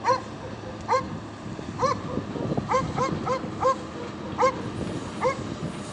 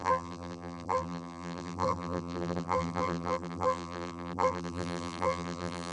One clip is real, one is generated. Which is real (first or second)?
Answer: first